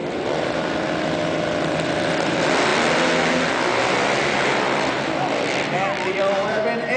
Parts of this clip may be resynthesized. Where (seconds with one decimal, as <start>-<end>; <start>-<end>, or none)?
none